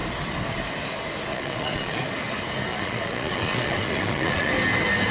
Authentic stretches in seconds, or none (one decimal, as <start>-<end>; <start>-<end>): 0.0-1.3; 2.0-2.7; 4.5-5.1